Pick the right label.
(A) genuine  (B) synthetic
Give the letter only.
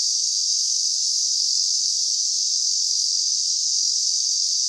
B